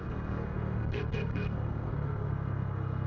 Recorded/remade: remade